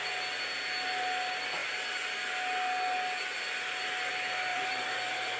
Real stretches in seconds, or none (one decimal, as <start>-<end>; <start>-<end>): 0.0-4.5